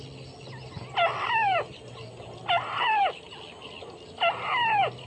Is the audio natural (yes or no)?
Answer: yes